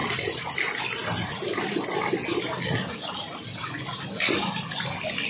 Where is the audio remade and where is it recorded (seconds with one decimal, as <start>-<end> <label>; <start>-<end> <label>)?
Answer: 0.0-5.3 recorded